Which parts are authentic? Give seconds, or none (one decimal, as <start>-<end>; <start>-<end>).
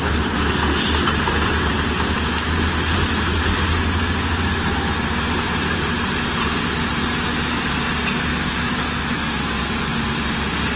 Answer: 0.0-8.3; 9.6-10.8